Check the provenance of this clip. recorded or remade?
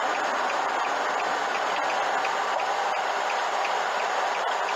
recorded